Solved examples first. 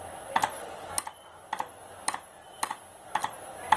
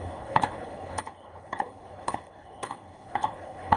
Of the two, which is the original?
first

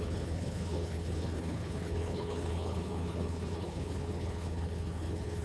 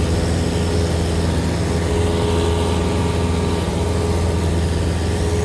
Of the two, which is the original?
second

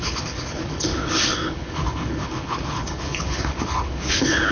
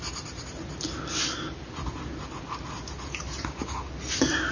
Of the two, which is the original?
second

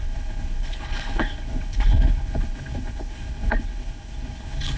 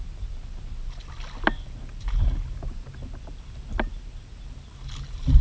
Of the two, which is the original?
second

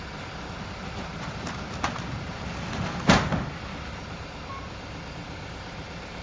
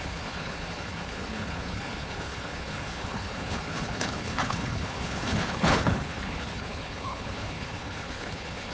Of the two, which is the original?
first